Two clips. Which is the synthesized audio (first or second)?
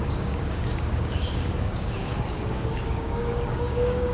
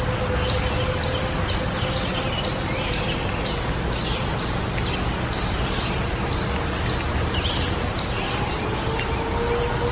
first